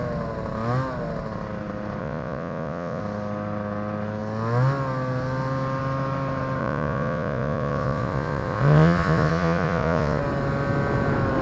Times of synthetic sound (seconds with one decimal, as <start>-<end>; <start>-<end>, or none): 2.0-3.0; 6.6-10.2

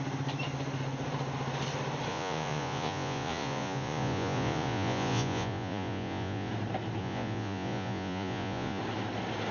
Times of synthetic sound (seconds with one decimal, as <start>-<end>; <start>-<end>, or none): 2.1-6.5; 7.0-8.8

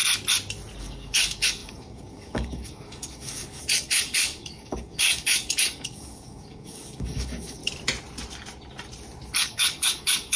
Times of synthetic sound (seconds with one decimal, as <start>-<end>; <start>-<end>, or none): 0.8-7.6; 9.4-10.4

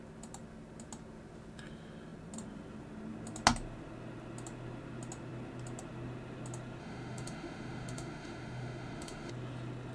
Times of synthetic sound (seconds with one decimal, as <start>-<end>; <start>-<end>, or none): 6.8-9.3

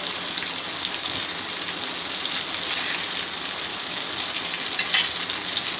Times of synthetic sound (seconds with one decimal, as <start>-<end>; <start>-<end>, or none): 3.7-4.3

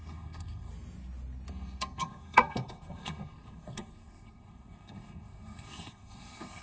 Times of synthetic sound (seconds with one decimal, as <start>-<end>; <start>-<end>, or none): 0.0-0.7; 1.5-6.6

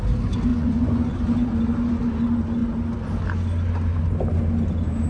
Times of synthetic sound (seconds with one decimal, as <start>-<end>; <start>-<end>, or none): 0.5-1.2

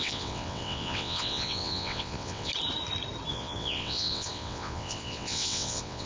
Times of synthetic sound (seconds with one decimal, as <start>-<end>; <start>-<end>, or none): 0.0-2.5; 3.3-6.1